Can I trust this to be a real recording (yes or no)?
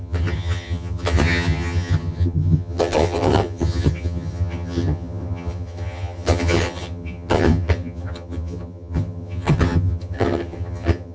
no